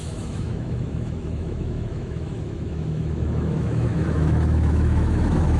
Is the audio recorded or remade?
remade